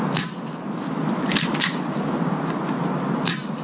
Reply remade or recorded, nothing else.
recorded